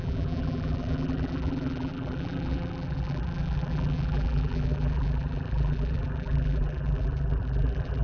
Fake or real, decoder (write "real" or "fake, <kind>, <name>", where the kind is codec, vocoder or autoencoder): fake, vocoder, BigVGAN v2